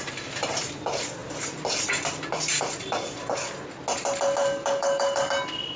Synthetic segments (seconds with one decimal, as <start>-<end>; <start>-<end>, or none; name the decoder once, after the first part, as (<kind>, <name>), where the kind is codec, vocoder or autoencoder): 4.4-5.3 (codec, DAC)